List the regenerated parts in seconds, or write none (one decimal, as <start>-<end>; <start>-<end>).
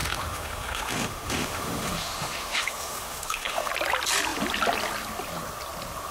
0.0-3.7